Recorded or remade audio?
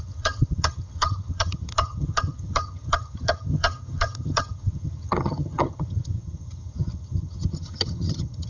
remade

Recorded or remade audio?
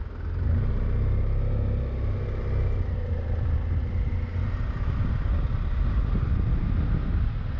recorded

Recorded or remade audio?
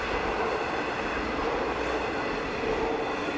recorded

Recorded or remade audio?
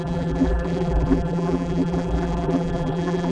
remade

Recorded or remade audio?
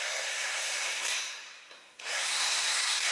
remade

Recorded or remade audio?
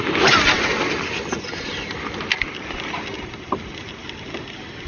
recorded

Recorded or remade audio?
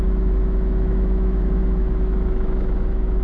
remade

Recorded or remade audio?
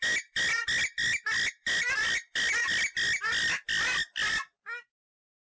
recorded